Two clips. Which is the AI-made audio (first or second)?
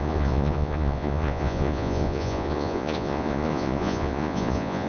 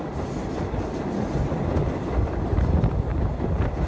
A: first